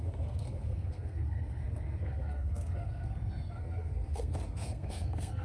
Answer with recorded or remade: remade